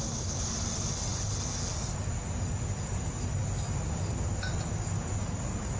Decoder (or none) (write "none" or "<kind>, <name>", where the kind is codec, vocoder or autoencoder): none